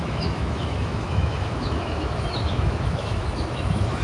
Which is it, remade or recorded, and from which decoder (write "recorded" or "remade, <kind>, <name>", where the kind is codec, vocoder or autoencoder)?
remade, autoencoder, DAC-VAE